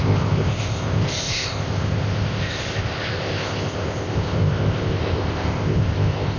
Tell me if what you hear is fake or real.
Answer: fake